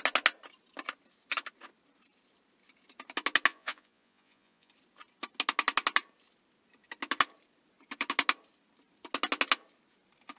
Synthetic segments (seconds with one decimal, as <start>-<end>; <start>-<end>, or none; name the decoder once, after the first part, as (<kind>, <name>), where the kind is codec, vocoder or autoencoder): 3.5-4.7 (vocoder, Vocos)